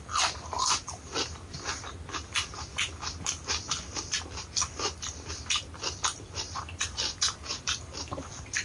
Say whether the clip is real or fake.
fake